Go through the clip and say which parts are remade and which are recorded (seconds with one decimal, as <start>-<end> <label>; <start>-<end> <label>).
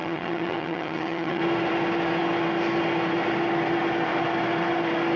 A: 0.0-1.4 remade; 1.4-5.2 recorded